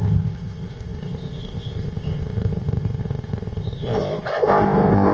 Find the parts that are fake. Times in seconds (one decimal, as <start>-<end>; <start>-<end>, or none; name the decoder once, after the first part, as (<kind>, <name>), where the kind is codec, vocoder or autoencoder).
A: 0.0-5.1 (codec, ZipCodec)